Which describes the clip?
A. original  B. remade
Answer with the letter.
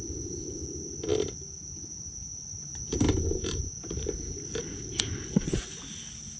A